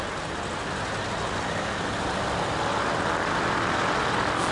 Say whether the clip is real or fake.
real